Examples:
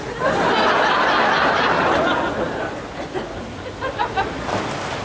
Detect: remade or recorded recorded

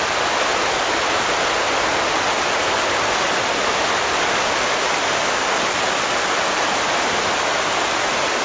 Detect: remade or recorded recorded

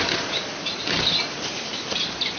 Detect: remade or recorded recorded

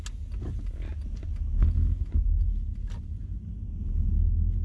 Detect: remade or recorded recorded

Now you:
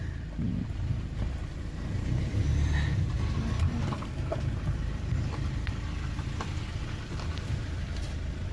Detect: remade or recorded remade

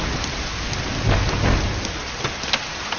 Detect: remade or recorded recorded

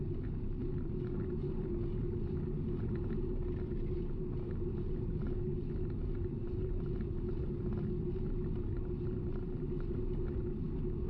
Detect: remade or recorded recorded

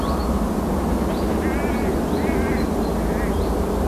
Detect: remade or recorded recorded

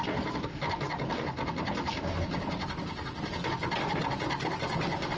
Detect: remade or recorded recorded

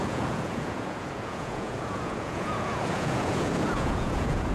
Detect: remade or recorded remade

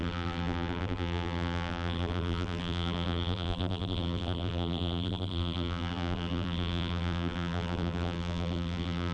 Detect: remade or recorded remade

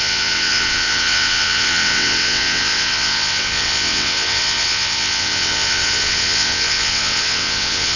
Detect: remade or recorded remade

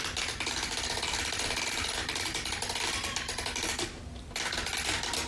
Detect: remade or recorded recorded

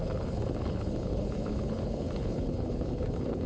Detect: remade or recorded remade